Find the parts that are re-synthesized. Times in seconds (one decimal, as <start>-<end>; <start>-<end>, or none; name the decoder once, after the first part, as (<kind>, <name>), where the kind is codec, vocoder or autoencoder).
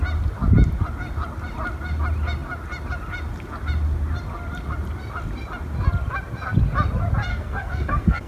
7.3-8.3 (codec, SNAC)